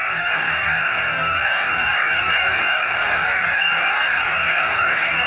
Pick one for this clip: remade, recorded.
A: remade